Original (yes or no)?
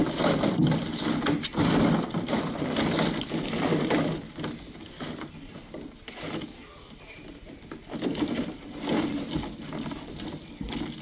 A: yes